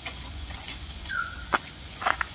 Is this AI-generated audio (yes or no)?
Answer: yes